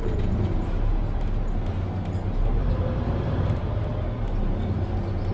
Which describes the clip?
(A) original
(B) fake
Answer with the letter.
A